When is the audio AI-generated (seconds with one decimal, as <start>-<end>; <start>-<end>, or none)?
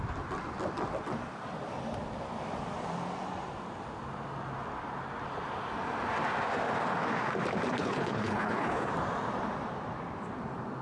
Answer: 7.7-8.9